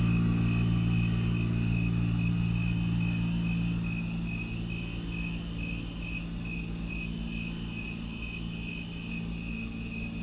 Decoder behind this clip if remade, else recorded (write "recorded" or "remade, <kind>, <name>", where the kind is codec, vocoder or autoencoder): recorded